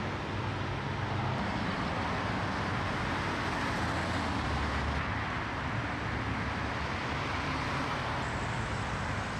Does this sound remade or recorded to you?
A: recorded